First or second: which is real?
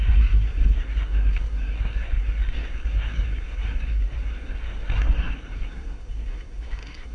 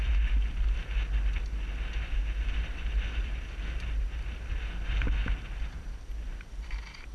second